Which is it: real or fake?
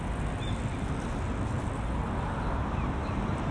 real